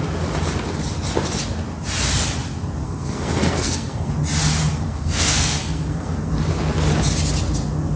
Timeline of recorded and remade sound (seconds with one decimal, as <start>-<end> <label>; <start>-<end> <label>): 0.0-2.8 recorded; 2.8-4.1 remade; 4.1-4.7 recorded; 4.7-6.3 remade; 6.3-8.0 recorded